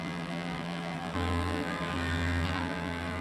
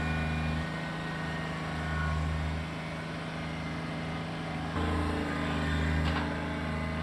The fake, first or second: first